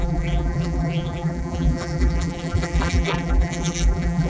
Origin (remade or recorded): remade